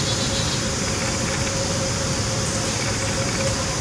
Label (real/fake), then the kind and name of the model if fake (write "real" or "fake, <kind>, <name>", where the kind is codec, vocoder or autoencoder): real